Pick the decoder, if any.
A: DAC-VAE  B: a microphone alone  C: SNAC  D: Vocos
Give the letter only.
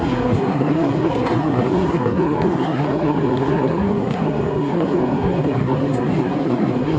C